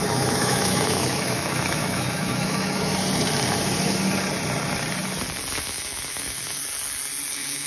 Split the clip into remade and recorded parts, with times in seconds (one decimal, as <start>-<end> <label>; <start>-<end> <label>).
0.0-2.9 remade; 2.9-5.6 recorded; 5.6-6.6 remade; 6.6-7.3 recorded; 7.3-7.7 remade